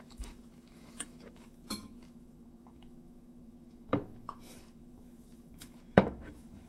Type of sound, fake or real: fake